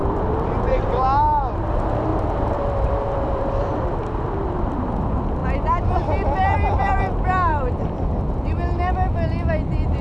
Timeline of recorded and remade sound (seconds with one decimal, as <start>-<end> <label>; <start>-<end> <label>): 0.0-2.1 recorded; 2.1-3.0 remade; 3.0-7.5 recorded; 7.5-8.9 remade; 8.9-10.0 recorded